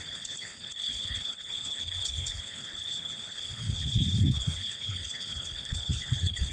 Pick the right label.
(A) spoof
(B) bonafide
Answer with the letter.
A